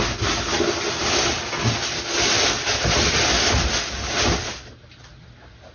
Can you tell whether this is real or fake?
real